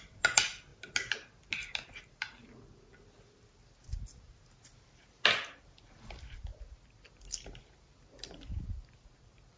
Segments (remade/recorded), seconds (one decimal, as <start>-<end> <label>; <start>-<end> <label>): 0.0-9.6 recorded